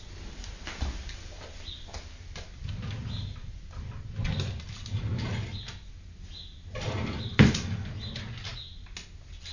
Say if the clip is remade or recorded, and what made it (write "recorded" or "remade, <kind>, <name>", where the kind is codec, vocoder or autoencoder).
recorded